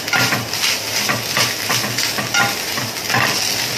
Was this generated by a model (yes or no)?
no